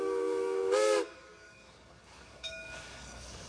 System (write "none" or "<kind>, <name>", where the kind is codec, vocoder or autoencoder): codec, DAC